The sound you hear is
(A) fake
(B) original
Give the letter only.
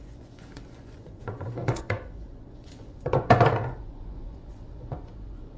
A